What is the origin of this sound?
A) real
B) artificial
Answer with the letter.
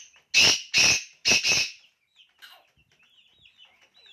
A